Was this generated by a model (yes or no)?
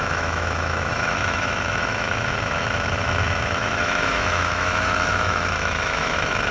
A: yes